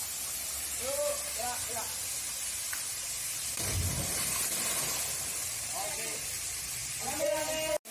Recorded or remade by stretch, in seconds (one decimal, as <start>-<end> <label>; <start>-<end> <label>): 0.0-5.4 recorded; 5.4-6.2 remade; 6.2-6.8 recorded; 6.8-7.4 remade; 7.4-7.9 recorded

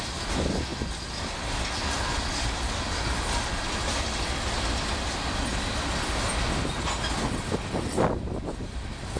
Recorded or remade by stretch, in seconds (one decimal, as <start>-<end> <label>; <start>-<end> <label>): 0.0-9.2 recorded

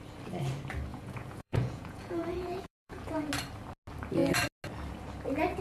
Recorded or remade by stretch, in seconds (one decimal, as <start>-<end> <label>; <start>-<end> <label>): 0.0-0.9 recorded; 0.9-3.3 remade; 3.3-5.6 recorded

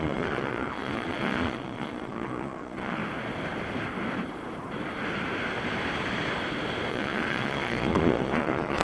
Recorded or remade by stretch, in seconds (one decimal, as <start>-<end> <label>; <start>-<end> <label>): 0.0-3.0 remade; 3.0-6.9 recorded; 6.9-8.8 remade

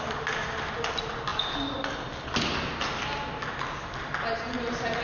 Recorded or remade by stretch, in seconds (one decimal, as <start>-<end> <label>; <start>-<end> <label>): 0.0-5.0 recorded

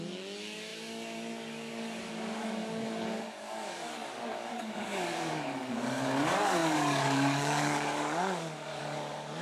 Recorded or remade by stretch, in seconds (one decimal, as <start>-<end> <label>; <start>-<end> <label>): 0.0-9.4 remade

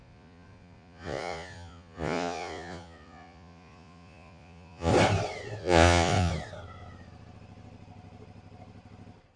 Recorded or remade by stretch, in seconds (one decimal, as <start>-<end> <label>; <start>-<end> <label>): 0.0-4.9 remade; 4.9-5.6 recorded; 5.6-6.3 remade; 6.3-9.4 recorded

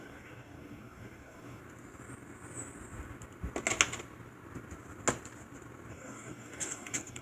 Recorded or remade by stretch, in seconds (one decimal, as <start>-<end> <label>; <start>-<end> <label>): 0.0-1.6 remade; 1.6-5.9 recorded; 5.9-7.2 remade